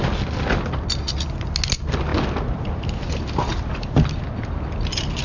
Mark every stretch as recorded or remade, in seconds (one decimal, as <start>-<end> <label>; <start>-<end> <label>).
0.0-5.2 recorded